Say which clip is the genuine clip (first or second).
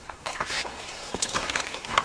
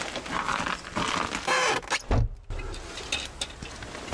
second